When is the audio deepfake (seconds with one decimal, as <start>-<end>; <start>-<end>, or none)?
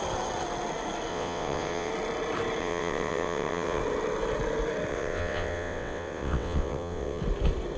1.1-1.9; 2.6-3.8; 4.9-7.2